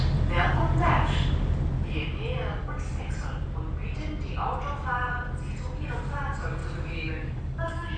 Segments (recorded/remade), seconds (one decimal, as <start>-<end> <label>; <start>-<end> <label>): 0.0-2.5 recorded; 2.5-3.0 remade; 3.0-6.6 recorded; 6.6-8.0 remade